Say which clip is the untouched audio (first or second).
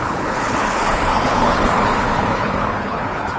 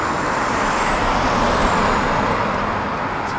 second